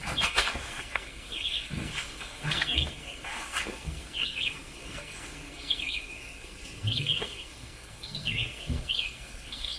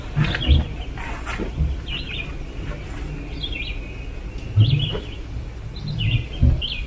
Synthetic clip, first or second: first